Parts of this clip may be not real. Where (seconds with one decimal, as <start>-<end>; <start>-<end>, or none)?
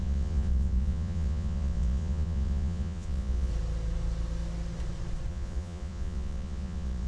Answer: 0.0-3.5; 5.3-7.1